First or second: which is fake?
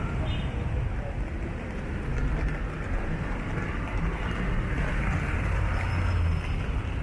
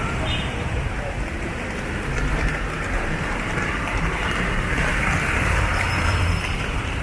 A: second